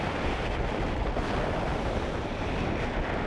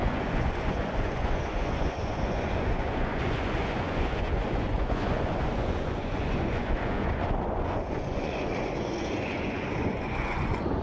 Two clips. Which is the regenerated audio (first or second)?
second